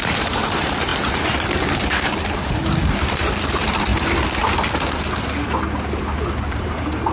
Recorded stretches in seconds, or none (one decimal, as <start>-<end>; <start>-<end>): 3.9-6.6